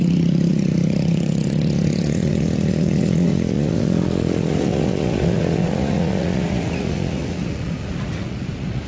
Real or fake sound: fake